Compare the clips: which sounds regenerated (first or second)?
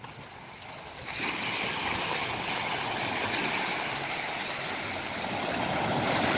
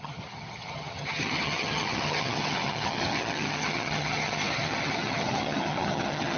second